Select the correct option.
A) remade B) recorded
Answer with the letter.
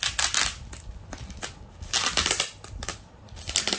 B